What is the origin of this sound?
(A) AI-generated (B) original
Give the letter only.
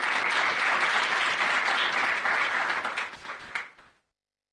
B